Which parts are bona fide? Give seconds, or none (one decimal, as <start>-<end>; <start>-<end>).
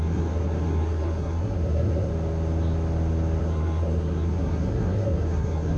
2.1-3.4